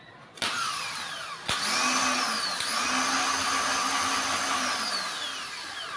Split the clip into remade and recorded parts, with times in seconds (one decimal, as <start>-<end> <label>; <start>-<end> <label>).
0.0-6.0 recorded